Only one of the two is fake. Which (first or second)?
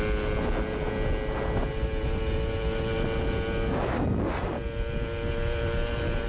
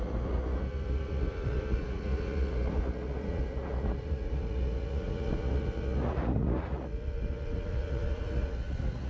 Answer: second